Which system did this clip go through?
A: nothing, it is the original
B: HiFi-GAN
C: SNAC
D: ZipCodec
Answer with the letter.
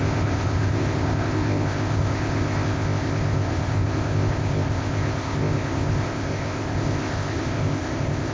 D